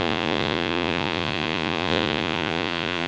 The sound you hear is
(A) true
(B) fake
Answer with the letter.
B